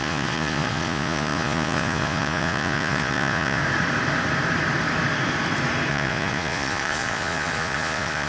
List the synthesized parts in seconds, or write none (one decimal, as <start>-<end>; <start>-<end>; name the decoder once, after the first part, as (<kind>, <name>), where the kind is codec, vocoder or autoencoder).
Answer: 0.0-3.6 (vocoder, Vocos); 5.9-8.3